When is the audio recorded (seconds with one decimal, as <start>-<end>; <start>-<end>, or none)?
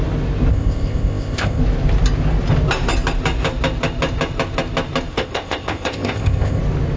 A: 0.0-0.5; 1.6-5.1; 6.6-7.0